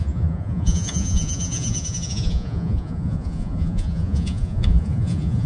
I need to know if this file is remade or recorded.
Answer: remade